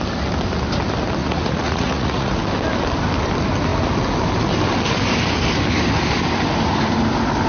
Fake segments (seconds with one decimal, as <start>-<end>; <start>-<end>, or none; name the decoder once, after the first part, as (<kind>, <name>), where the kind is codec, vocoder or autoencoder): 1.2-2.3 (vocoder, Vocos)